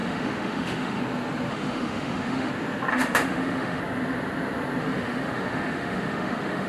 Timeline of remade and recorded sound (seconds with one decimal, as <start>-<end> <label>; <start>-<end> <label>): 0.0-1.0 remade; 1.0-1.5 recorded; 1.5-2.5 remade; 2.5-2.9 recorded; 2.9-3.8 remade; 3.8-4.8 recorded; 4.8-6.7 remade